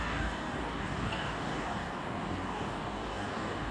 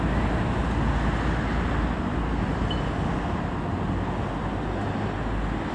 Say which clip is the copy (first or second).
first